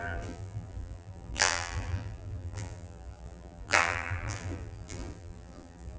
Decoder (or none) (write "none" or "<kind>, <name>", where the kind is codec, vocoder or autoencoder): vocoder, BigVGAN v2